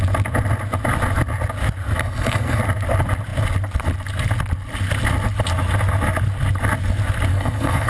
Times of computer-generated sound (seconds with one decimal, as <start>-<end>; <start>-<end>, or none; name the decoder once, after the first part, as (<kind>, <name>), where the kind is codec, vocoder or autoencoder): 2.0-2.6 (codec, SNAC); 7.3-7.9